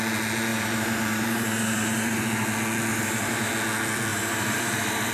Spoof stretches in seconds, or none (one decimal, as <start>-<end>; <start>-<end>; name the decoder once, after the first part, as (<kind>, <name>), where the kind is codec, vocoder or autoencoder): 0.5-2.2 (vocoder, BigVGAN v2); 2.9-3.5; 4.1-5.1